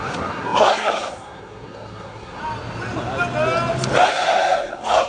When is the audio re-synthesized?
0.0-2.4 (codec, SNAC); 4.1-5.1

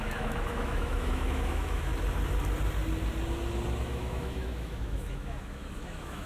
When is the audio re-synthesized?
0.0-1.9 (autoencoder, DAC-VAE); 3.8-6.3

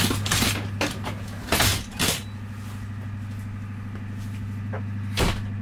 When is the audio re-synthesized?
none

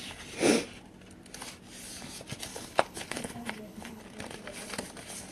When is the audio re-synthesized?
2.5-4.0 (codec, HILCodec)

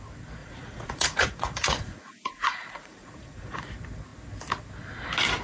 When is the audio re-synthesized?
0.4-3.6 (vocoder, Vocos)

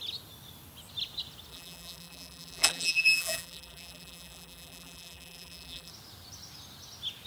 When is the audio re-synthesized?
1.5-5.9 (vocoder, BigVGAN v2)

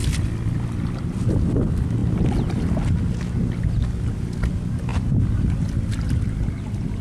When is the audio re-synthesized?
4.9-7.0 (vocoder, BigVGAN v2)